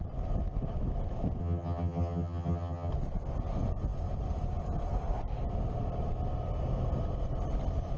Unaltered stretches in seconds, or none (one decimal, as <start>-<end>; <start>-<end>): 0.0-1.4; 2.9-8.0